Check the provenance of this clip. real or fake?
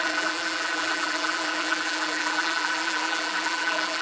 fake